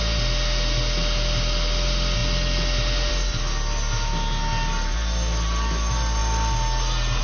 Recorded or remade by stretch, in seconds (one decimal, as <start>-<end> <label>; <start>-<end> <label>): 0.0-7.2 recorded